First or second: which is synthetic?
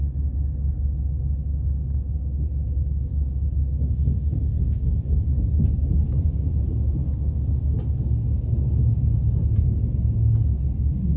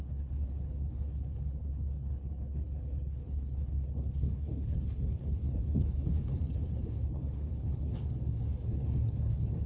second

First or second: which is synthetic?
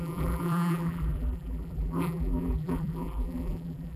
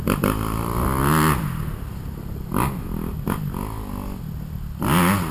first